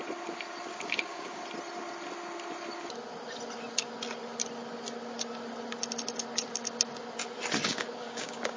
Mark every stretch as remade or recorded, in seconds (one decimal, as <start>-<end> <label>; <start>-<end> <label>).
0.0-0.7 recorded; 0.7-1.4 remade; 1.4-7.7 recorded; 7.7-8.6 remade